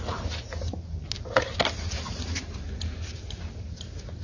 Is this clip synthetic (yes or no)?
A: no